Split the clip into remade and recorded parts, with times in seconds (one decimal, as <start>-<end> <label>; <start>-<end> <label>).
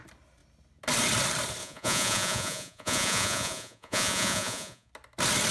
0.0-1.6 recorded; 1.6-4.9 remade; 4.9-5.5 recorded